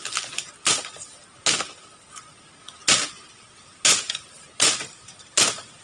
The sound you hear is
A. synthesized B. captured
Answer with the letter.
B